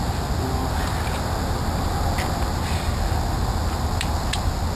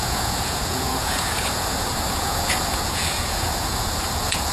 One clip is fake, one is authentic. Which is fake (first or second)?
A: second